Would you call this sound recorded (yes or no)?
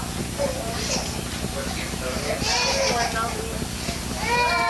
yes